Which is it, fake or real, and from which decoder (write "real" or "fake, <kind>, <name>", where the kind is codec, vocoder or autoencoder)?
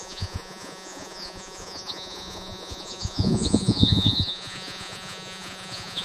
fake, vocoder, Vocos